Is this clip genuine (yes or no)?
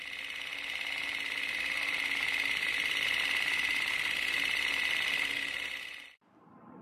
no